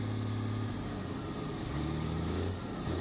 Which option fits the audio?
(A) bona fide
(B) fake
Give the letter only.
A